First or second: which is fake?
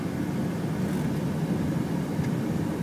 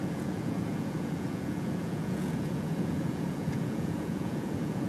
second